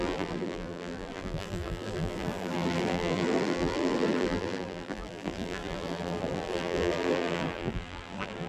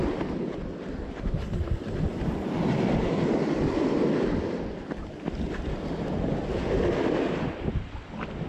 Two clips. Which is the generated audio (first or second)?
first